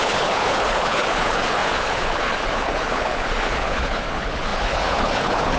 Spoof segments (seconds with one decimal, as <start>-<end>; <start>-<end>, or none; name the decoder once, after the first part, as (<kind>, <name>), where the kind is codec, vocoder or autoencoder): 0.0-5.6 (codec, HILCodec)